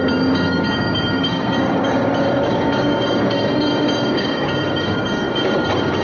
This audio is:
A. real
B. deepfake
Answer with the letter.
B